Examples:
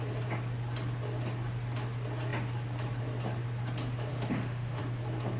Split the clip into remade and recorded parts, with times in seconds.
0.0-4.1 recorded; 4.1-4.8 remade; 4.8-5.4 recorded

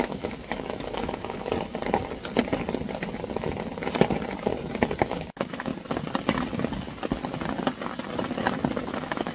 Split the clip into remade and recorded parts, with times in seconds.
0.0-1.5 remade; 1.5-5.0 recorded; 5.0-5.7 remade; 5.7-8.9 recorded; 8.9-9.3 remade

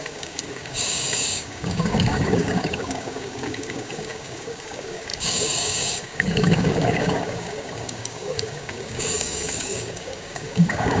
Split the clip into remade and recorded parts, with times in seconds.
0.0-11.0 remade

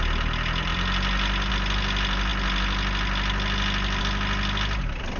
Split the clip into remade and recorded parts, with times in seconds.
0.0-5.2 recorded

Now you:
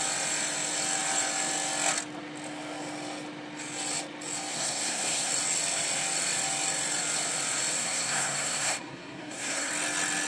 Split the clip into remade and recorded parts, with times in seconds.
0.0-4.5 recorded; 4.5-5.3 remade; 5.3-7.8 recorded; 7.8-9.7 remade; 9.7-10.3 recorded

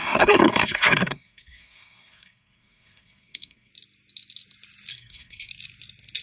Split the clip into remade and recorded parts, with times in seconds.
0.0-3.7 remade; 3.7-4.9 recorded; 4.9-5.5 remade; 5.5-6.2 recorded

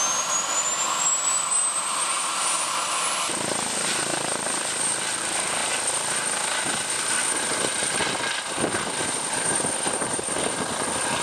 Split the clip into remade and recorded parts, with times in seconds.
0.0-11.2 recorded

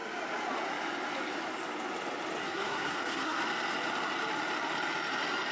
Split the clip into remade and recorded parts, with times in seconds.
0.0-2.4 recorded; 2.4-3.4 remade; 3.4-5.5 recorded